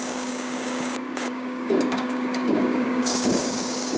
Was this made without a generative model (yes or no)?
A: no